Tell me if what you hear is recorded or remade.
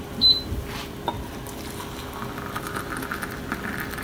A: recorded